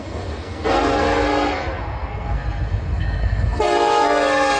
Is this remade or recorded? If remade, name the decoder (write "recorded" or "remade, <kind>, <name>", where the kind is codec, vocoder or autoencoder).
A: remade, codec, SNAC